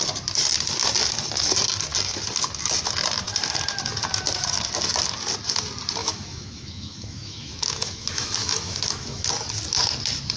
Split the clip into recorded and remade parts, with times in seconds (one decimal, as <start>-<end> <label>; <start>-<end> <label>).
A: 0.0-6.0 recorded; 6.0-9.3 remade; 9.3-10.4 recorded